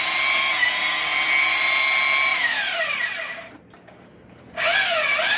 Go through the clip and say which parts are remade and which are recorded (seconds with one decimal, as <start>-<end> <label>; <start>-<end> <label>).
0.0-2.3 recorded; 2.3-3.6 remade; 3.6-5.4 recorded

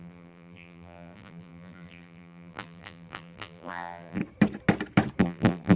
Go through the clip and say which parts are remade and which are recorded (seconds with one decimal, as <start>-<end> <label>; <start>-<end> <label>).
0.0-4.2 remade; 4.2-5.2 recorded; 5.2-5.8 remade

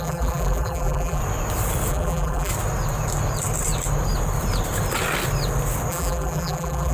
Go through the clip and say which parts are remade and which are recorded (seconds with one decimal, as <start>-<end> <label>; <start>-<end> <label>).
0.0-1.2 remade; 1.2-1.9 recorded; 1.9-2.5 remade; 2.5-5.9 recorded; 5.9-6.9 remade

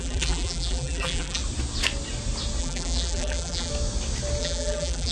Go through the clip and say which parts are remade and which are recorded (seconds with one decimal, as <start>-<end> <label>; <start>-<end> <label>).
0.0-1.4 remade; 1.4-2.6 recorded; 2.6-3.7 remade; 3.7-4.4 recorded; 4.4-5.1 remade

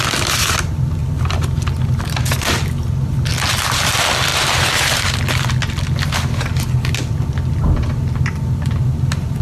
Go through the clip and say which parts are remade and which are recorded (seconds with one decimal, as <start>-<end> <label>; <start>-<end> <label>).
0.0-1.0 recorded; 1.0-1.7 remade; 1.7-4.3 recorded; 4.3-5.2 remade; 5.2-9.4 recorded

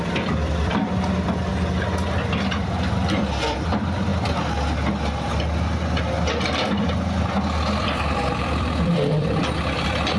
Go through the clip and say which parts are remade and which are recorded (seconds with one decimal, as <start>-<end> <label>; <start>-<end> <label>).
0.0-1.5 remade; 1.5-2.3 recorded; 2.3-4.1 remade; 4.1-7.4 recorded; 7.4-10.2 remade

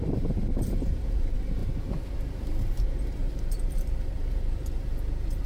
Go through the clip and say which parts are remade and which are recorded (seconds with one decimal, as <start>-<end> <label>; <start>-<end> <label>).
0.0-1.6 remade; 1.6-3.0 recorded; 3.0-5.5 remade